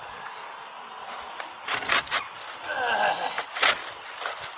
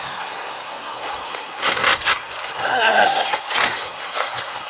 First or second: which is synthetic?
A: second